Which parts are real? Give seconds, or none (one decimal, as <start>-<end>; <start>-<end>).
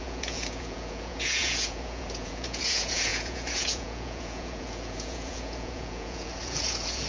none